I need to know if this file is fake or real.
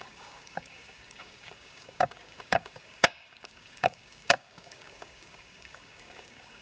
fake